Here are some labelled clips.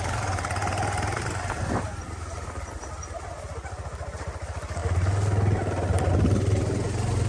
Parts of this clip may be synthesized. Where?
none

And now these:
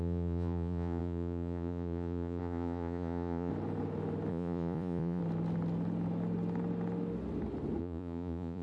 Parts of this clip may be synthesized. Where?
0.0-3.5 (vocoder, Vocos); 4.3-5.2; 7.8-8.6

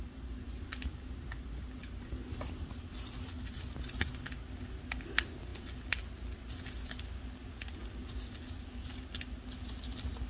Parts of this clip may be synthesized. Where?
none